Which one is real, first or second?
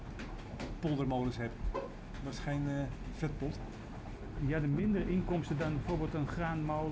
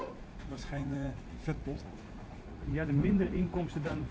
first